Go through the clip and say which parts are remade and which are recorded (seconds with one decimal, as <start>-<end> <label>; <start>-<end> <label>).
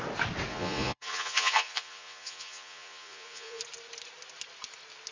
0.0-0.5 recorded; 0.5-3.6 remade; 3.6-5.1 recorded